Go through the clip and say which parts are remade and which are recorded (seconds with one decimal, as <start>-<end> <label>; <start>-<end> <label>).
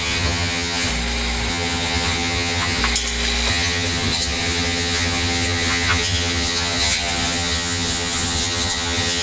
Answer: 0.0-0.9 remade; 0.9-1.5 recorded; 1.5-2.8 remade; 2.8-3.5 recorded; 3.5-9.2 remade